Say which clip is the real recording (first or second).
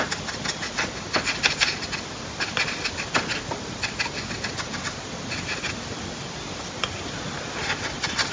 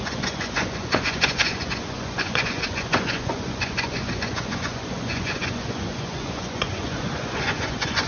first